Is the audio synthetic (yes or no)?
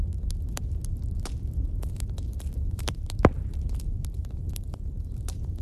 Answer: yes